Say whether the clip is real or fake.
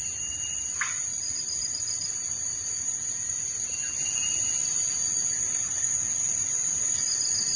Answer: real